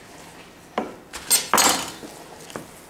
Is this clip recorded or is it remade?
recorded